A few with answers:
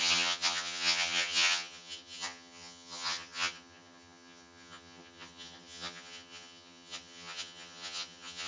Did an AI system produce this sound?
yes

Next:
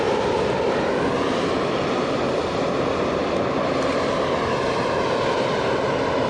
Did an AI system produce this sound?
no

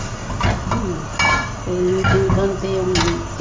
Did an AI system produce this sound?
no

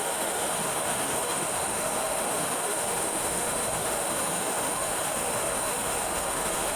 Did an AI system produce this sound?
yes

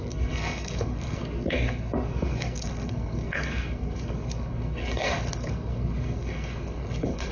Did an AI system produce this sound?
yes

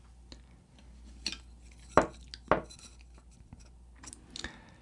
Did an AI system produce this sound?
no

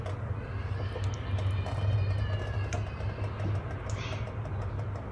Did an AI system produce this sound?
no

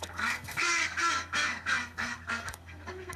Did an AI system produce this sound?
yes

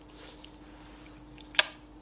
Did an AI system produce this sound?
yes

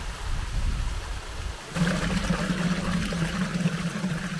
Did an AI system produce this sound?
no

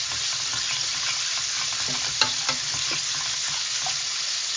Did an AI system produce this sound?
no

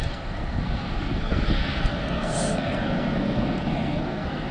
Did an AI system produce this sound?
yes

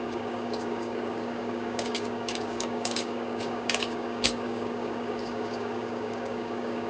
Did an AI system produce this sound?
yes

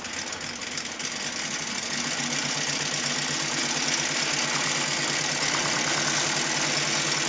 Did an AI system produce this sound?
no